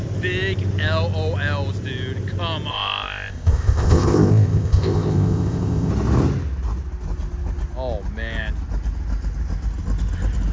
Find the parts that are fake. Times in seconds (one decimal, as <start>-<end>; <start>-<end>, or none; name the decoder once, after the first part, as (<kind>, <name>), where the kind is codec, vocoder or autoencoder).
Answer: 2.7-5.9 (codec, ZipCodec)